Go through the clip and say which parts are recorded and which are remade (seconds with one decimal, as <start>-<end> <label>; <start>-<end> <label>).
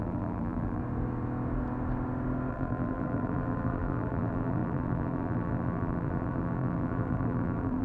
0.0-0.8 remade; 0.8-2.5 recorded; 2.5-7.8 remade